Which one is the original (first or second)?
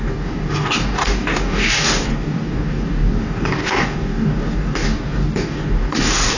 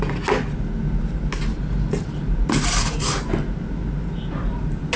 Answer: second